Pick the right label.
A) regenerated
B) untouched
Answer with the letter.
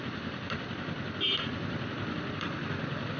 B